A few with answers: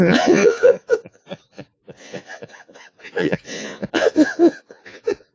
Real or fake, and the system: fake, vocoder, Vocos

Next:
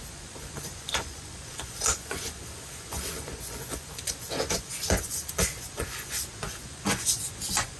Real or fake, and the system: fake, vocoder, Vocos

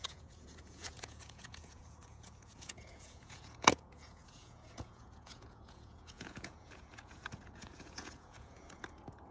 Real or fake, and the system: fake, vocoder, Vocos